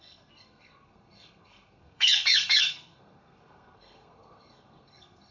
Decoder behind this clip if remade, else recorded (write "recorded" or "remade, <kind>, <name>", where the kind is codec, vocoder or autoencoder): remade, codec, SNAC